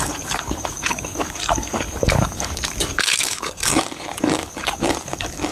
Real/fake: fake